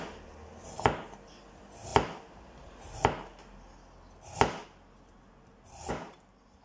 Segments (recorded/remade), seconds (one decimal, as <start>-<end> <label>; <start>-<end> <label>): 0.0-6.6 recorded